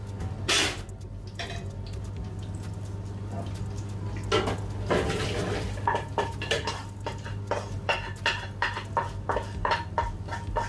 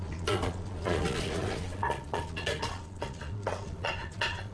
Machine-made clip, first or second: second